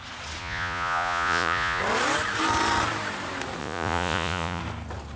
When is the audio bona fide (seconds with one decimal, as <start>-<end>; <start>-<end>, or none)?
0.0-0.4; 1.8-3.6; 4.6-5.2